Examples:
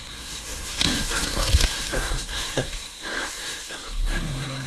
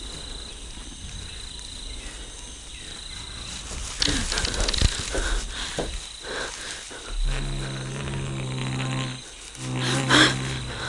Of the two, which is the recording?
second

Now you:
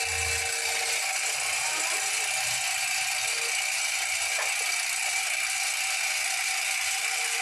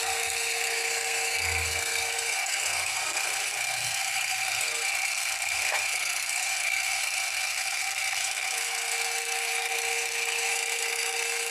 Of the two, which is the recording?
first